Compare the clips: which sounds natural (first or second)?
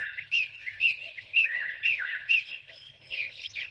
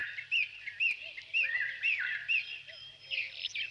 second